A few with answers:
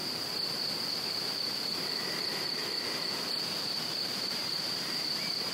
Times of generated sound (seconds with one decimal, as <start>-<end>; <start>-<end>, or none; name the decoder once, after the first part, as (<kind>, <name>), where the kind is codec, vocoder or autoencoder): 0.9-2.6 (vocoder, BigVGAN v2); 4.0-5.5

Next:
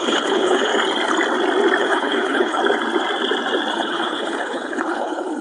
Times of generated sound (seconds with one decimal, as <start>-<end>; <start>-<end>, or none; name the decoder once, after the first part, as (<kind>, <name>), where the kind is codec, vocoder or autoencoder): 0.0-0.7 (codec, HILCodec); 1.8-2.6; 3.7-5.4

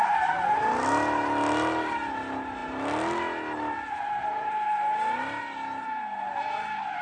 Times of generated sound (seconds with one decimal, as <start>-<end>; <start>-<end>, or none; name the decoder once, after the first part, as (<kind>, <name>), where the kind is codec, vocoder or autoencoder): none

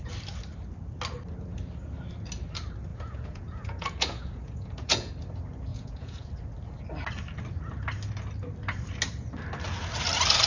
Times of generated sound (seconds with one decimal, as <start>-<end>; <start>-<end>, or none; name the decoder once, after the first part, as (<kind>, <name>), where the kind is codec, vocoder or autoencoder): 2.9-5.1 (vocoder, Vocos); 5.7-6.3